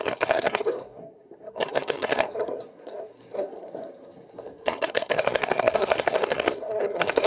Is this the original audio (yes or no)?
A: no